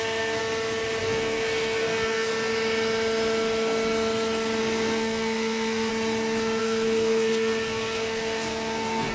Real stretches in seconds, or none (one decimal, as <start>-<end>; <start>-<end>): 0.4-1.0; 2.3-4.6; 5.9-6.6